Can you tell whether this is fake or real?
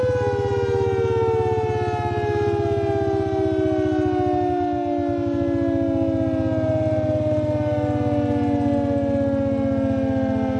real